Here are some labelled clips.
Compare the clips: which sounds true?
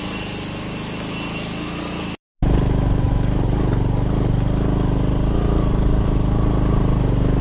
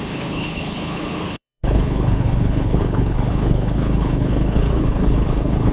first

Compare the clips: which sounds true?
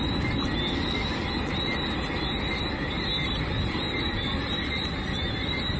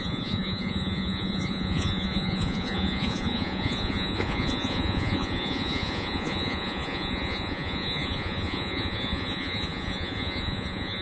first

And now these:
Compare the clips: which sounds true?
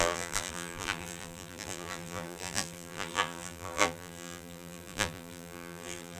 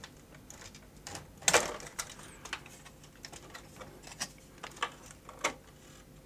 second